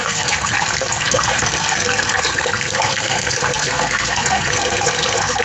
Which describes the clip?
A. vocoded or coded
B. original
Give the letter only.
A